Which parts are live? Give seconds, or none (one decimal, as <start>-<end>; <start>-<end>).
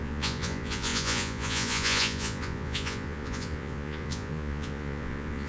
none